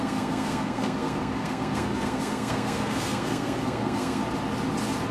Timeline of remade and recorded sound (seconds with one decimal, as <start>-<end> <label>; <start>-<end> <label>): 0.0-4.2 remade; 4.2-5.1 recorded